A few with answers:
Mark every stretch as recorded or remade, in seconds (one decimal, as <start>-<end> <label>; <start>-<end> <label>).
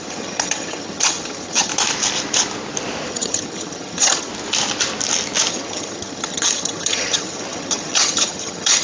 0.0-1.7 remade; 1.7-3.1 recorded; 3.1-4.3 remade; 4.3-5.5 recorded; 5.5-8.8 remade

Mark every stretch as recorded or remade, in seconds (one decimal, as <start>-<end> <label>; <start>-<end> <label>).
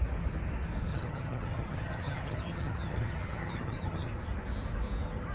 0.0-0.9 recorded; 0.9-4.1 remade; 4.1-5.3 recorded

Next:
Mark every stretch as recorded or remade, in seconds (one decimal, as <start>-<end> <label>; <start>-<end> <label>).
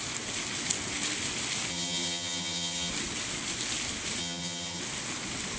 0.0-1.7 recorded; 1.7-2.9 remade; 2.9-4.2 recorded; 4.2-4.8 remade; 4.8-5.6 recorded